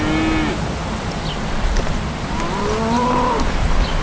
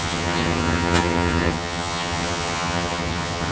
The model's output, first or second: second